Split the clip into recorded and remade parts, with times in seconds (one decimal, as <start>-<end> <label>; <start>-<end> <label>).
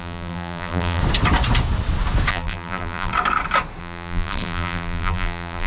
0.0-1.0 remade; 1.0-2.3 recorded; 2.3-3.1 remade; 3.1-3.8 recorded; 3.8-5.7 remade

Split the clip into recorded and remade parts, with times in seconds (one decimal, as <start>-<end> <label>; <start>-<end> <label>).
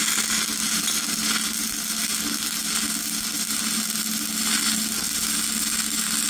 0.0-6.3 recorded